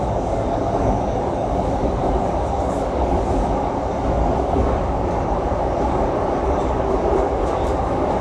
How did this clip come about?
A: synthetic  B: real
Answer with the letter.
A